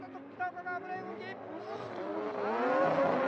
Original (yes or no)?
yes